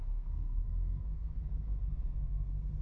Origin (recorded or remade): remade